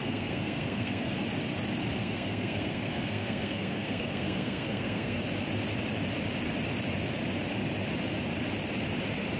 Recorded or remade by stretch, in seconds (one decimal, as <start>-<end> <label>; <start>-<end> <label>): 0.0-1.2 remade; 1.2-2.0 recorded; 2.0-5.2 remade; 5.2-9.4 recorded